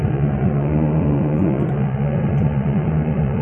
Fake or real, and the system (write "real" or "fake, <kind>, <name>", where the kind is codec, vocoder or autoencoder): fake, vocoder, Vocos